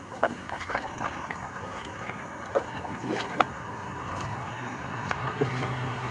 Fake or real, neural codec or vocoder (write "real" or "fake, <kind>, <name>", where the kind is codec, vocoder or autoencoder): fake, codec, SNAC